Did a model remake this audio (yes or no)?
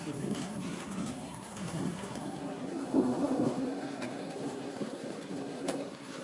yes